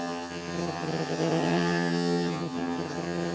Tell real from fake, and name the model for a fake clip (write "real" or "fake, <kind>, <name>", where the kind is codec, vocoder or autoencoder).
fake, vocoder, HiFi-GAN